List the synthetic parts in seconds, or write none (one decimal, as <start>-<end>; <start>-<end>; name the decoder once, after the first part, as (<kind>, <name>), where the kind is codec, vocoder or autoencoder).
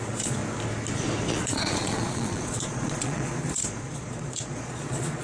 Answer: 0.0-0.4 (vocoder, Vocos); 1.3-5.2